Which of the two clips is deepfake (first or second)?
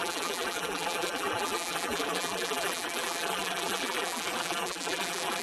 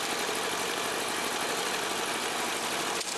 first